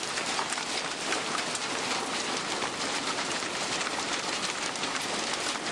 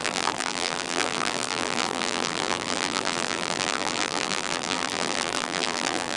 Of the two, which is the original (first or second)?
first